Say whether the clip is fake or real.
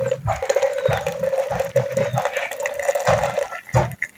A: real